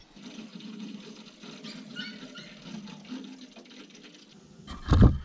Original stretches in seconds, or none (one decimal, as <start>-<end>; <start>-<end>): 0.0-0.5; 1.0-5.2